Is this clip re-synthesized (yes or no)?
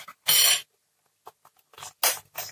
no